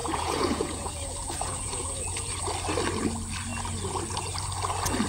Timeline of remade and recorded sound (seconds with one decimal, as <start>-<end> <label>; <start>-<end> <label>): 0.0-2.4 remade; 2.4-5.1 recorded